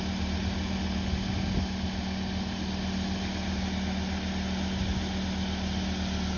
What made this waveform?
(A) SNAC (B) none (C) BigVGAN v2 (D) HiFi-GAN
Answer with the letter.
B